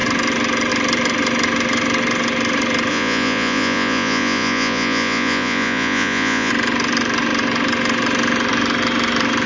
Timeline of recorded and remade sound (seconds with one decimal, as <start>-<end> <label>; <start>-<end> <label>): 0.0-2.9 recorded; 2.9-6.5 remade; 6.5-9.5 recorded

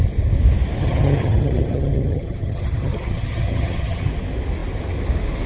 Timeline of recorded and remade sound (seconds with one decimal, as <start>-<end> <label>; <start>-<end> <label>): 0.0-0.8 recorded; 0.8-4.1 remade; 4.1-5.5 recorded

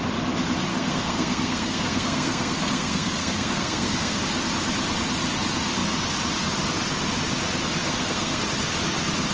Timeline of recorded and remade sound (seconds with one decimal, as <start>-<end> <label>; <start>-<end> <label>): 0.0-0.7 recorded; 0.7-4.2 remade; 4.2-7.8 recorded; 7.8-8.4 remade; 8.4-9.3 recorded

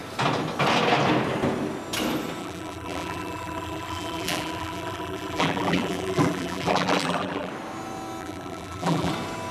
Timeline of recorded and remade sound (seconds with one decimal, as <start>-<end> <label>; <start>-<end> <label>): 0.0-2.4 recorded; 2.4-7.5 remade; 7.5-8.2 recorded; 8.2-9.1 remade; 9.1-9.5 recorded

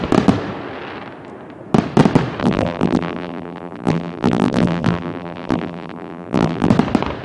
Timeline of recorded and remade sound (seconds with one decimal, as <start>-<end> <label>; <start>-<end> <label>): 0.0-2.4 recorded; 2.4-6.7 remade; 6.7-7.2 recorded

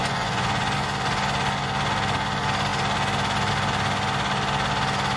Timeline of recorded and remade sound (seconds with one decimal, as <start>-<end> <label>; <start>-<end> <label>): 0.0-0.7 remade; 0.7-5.2 recorded

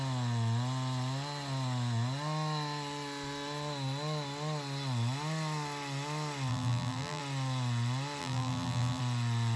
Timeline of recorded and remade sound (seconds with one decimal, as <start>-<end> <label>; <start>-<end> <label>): 0.0-6.5 recorded; 6.5-7.2 remade; 7.2-8.2 recorded; 8.2-9.0 remade; 9.0-9.6 recorded